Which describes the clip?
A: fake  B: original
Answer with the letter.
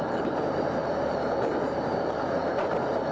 A